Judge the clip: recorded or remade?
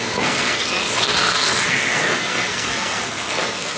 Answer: remade